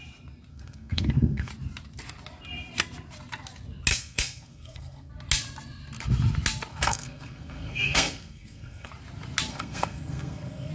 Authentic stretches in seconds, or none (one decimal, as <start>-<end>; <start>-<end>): 0.0-0.5; 1.5-3.9; 5.1-6.7; 8.9-9.5

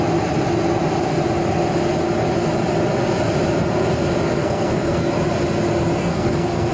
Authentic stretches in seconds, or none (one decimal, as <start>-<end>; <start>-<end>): 0.0-4.4; 5.1-6.0

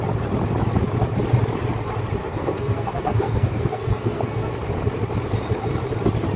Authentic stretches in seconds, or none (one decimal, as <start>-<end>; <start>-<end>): 0.0-2.2; 4.5-6.4

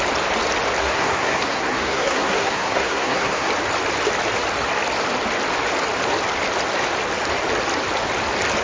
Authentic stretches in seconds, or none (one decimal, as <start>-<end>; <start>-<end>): 0.0-0.8; 3.5-8.6

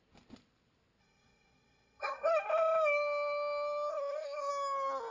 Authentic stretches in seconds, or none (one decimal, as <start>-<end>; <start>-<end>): 0.0-1.0; 2.3-3.9; 4.5-5.1

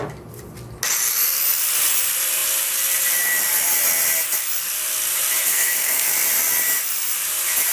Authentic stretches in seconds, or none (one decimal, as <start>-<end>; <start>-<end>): 0.0-5.5; 6.1-7.7